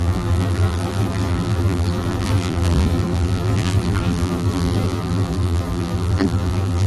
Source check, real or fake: fake